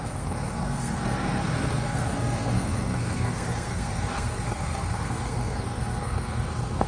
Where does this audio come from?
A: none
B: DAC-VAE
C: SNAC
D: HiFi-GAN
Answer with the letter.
C